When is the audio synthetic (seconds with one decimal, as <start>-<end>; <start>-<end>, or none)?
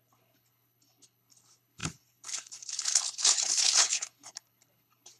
0.0-5.2